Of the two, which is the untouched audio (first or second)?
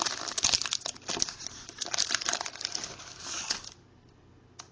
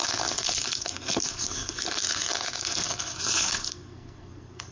first